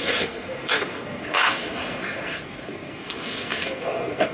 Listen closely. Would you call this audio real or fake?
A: fake